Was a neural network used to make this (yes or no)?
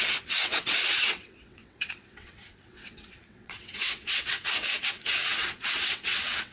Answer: yes